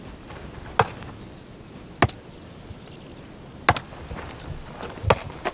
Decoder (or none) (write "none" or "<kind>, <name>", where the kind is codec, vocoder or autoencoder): none